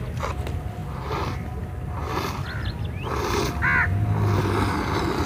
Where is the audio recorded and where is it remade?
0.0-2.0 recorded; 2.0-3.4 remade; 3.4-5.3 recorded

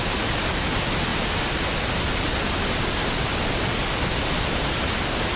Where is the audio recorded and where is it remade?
0.0-5.4 recorded

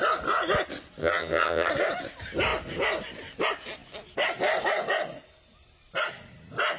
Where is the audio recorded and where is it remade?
0.0-1.0 recorded; 1.0-1.7 remade; 1.7-6.8 recorded

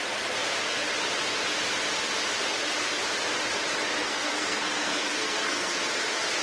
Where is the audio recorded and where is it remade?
0.0-4.0 recorded; 4.0-5.8 remade; 5.8-6.4 recorded